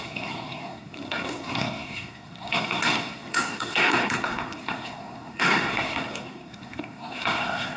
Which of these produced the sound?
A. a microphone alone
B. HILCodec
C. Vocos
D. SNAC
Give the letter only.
D